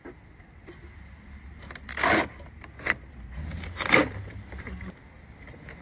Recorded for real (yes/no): yes